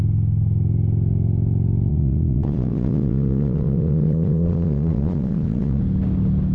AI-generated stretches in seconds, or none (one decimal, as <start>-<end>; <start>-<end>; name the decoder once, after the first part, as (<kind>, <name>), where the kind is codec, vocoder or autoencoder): 1.9-5.8 (vocoder, Vocos)